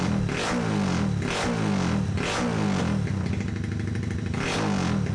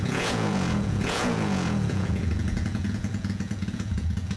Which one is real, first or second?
first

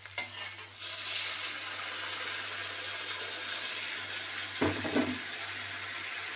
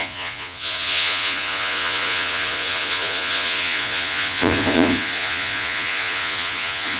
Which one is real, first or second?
first